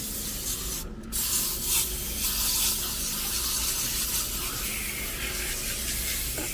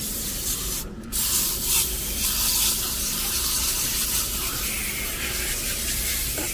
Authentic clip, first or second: first